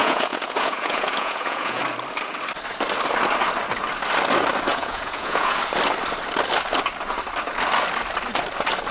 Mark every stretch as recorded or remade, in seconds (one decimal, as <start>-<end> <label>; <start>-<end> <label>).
0.0-1.8 remade; 1.8-4.7 recorded; 4.7-5.6 remade; 5.6-8.9 recorded